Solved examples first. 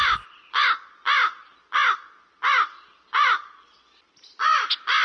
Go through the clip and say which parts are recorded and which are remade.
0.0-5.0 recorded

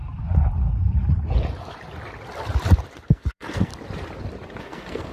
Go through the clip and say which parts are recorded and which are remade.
0.0-3.1 recorded; 3.1-3.7 remade; 3.7-4.6 recorded; 4.6-5.1 remade

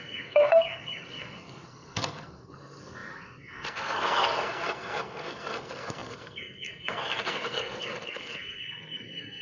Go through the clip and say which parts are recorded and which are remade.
0.0-9.4 remade